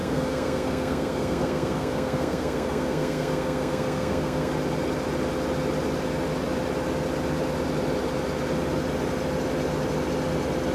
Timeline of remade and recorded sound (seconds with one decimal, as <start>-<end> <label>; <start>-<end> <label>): 0.0-4.5 remade; 4.5-10.7 recorded